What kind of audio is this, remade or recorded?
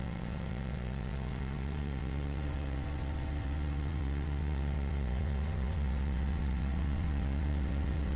remade